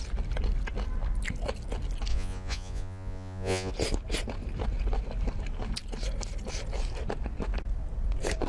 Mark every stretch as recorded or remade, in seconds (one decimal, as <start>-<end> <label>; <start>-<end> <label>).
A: 0.0-2.1 recorded; 2.1-3.7 remade; 3.7-8.5 recorded

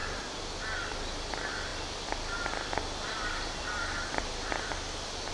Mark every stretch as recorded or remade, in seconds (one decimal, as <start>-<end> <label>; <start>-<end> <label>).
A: 0.0-5.3 recorded

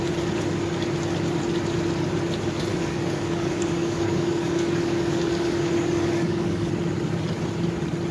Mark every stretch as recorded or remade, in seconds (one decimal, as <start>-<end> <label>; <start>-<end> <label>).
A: 0.0-2.7 recorded; 2.7-6.7 remade; 6.7-8.1 recorded

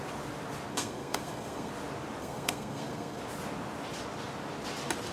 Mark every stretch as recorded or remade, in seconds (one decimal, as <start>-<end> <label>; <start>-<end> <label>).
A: 0.0-0.7 recorded; 0.7-1.7 remade; 1.7-2.2 recorded; 2.2-3.2 remade; 3.2-5.1 recorded

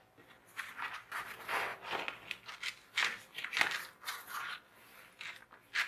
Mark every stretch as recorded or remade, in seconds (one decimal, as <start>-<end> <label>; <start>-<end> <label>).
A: 0.0-5.9 recorded

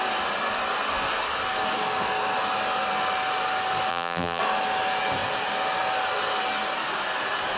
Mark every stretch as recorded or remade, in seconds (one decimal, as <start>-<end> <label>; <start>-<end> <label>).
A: 0.0-3.9 recorded; 3.9-4.4 remade; 4.4-7.6 recorded